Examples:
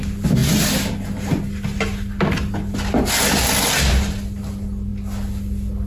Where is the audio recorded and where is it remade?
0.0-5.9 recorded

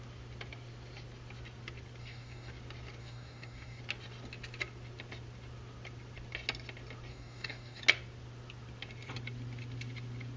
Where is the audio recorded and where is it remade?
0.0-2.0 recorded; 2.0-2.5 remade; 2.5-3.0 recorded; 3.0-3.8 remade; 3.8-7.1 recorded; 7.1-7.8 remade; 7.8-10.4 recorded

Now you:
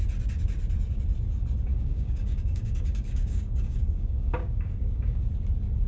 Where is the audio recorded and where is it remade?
0.0-1.7 recorded; 1.7-5.2 remade; 5.2-5.9 recorded

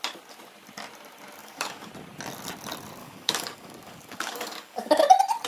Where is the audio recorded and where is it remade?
0.0-1.4 recorded; 1.4-1.9 remade; 1.9-3.0 recorded; 3.0-5.0 remade; 5.0-5.5 recorded

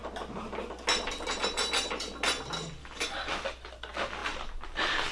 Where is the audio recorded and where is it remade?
0.0-2.8 recorded; 2.8-3.3 remade; 3.3-5.1 recorded

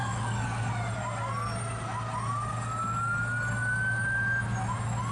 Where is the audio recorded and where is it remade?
0.0-0.7 remade; 0.7-5.1 recorded

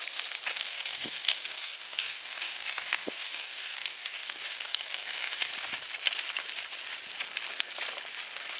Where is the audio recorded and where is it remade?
0.0-0.5 recorded; 0.5-5.5 remade; 5.5-8.6 recorded